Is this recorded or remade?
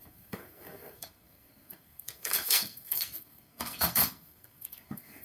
remade